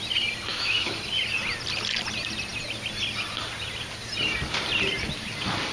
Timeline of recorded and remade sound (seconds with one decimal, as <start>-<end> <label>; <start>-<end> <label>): 0.0-0.5 recorded; 0.5-1.0 remade; 1.0-5.7 recorded

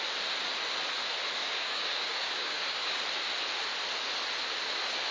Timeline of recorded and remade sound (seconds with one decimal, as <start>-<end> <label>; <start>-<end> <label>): 0.0-1.4 recorded; 1.4-3.0 remade; 3.0-5.1 recorded

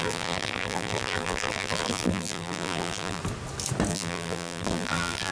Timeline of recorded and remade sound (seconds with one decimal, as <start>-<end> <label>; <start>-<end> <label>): 0.0-3.2 remade; 3.2-3.9 recorded; 3.9-5.3 remade

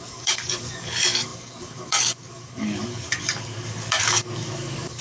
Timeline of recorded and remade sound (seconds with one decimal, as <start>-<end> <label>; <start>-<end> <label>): 0.0-5.0 remade